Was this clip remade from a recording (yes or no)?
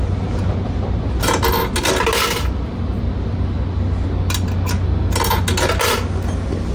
no